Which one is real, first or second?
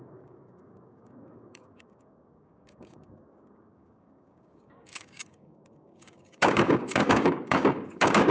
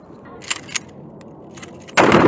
second